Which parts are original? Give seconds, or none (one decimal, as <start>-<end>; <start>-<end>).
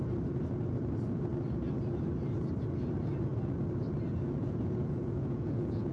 0.0-4.4